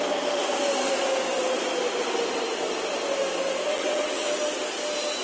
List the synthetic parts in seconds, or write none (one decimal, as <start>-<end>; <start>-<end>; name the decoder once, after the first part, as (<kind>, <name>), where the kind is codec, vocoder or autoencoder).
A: 3.7-4.3 (vocoder, WaveNeXt)